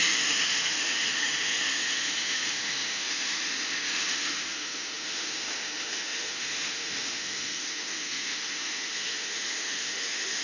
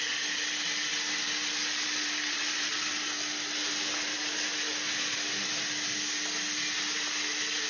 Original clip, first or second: second